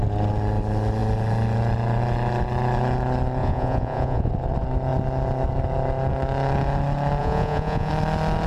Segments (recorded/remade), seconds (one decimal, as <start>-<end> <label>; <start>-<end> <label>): 0.0-3.4 recorded; 3.4-4.3 remade; 4.3-7.2 recorded; 7.2-7.9 remade; 7.9-8.5 recorded